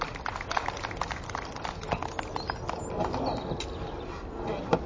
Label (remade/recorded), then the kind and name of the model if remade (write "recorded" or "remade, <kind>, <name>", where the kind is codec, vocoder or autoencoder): recorded